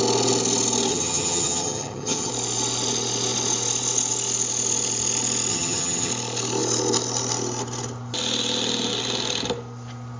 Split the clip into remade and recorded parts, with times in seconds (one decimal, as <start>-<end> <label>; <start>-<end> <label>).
0.0-0.9 recorded; 0.9-2.3 remade; 2.3-5.5 recorded; 5.5-6.1 remade; 6.1-10.2 recorded